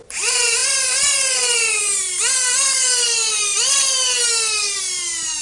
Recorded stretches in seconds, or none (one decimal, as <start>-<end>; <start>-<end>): 0.0-5.4